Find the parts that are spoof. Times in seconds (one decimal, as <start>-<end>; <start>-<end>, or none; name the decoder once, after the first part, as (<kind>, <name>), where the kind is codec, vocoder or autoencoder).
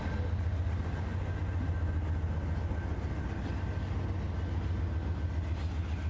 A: none